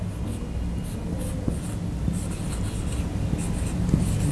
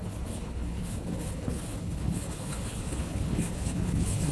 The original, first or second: first